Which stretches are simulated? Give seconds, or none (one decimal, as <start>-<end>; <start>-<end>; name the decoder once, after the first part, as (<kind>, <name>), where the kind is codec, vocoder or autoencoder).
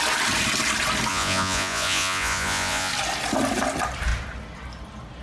1.1-2.9 (vocoder, Vocos)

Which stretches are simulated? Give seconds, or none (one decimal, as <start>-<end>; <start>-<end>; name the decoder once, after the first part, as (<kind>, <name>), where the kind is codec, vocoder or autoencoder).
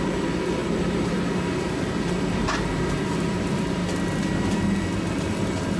0.0-3.8 (vocoder, BigVGAN v2)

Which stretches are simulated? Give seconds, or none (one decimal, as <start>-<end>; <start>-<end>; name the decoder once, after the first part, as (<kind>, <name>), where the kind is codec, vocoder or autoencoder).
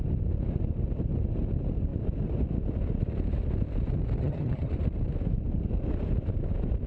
4.2-4.7 (vocoder, HiFi-GAN)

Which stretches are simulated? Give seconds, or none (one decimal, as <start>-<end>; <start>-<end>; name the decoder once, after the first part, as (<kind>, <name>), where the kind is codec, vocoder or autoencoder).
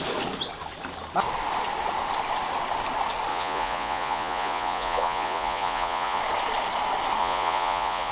3.3-6.2 (vocoder, Vocos); 7.2-8.1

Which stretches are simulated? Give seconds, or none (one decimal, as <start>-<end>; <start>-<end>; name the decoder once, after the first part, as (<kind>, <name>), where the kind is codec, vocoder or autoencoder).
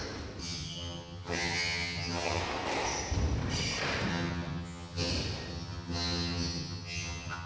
0.4-2.4 (vocoder, HiFi-GAN); 4.1-5.1; 5.5-7.5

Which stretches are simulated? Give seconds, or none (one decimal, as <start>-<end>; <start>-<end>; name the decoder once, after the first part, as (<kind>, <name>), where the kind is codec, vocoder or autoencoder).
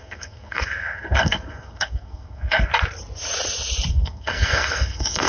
0.0-2.7 (codec, SNAC); 3.9-5.3